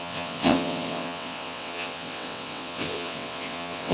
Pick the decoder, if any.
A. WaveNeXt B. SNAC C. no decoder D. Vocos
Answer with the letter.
A